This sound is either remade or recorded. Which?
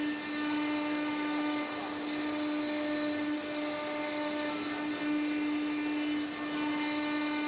recorded